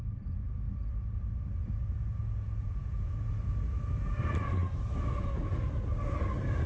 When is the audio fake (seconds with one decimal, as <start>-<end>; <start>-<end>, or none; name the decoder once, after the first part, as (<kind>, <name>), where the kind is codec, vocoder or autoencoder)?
2.2-3.3 (vocoder, Vocos)